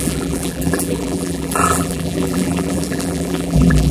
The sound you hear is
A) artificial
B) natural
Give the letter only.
A